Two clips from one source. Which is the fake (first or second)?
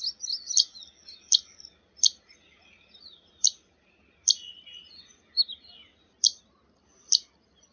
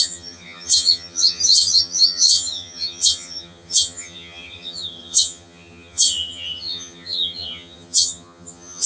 second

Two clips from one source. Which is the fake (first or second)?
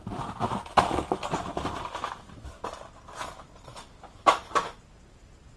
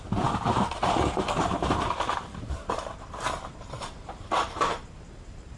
second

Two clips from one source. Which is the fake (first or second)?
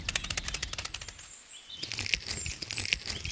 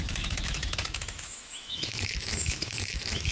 second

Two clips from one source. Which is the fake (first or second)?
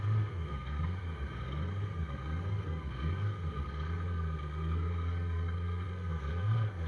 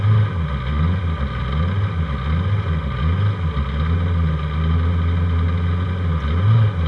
first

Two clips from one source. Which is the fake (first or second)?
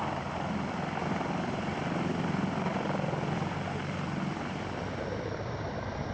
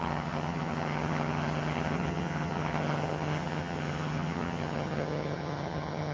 second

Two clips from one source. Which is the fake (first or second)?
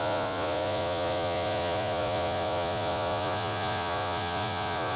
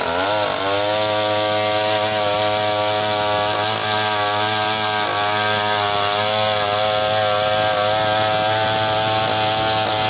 first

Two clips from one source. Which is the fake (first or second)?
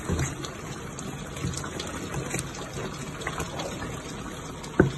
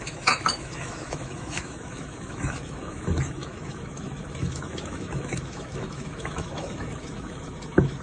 second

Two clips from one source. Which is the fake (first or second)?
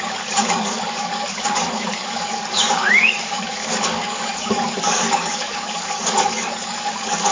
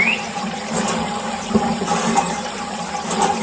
first